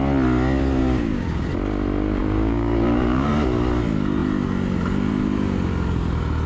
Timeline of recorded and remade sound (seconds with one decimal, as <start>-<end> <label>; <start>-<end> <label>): 0.0-0.8 recorded; 0.8-1.5 remade; 1.5-2.2 recorded; 2.2-3.3 remade; 3.3-6.5 recorded